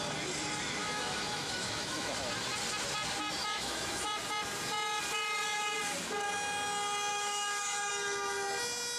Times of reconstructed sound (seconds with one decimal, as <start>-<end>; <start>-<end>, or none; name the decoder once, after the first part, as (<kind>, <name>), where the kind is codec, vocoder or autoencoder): 0.8-2.1 (autoencoder, DAC-VAE); 3.4-4.0; 7.1-7.9